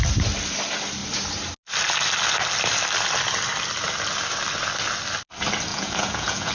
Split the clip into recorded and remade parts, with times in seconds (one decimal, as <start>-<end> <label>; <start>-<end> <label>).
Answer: 0.0-5.7 recorded; 5.7-6.5 remade